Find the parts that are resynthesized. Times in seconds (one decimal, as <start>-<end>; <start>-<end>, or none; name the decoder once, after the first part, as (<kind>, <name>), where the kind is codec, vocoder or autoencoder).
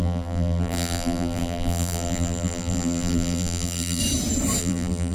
0.0-4.0 (vocoder, BigVGAN v2); 4.6-5.1